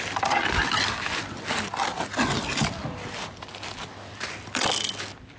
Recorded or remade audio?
recorded